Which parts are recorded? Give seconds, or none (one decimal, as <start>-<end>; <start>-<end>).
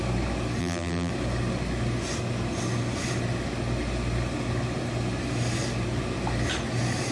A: 0.0-0.6; 1.1-7.1